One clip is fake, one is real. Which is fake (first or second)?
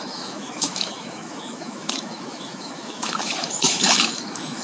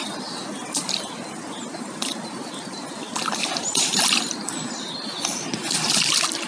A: first